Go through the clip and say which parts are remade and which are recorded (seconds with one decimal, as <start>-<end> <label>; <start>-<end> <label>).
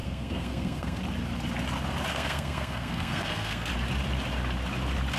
0.0-1.0 remade; 1.0-2.1 recorded; 2.1-3.7 remade; 3.7-5.2 recorded